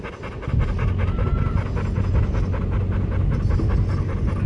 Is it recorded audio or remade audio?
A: recorded